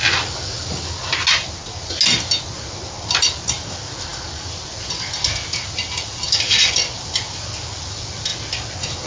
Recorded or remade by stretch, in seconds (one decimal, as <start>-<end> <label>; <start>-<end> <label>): 0.0-9.1 recorded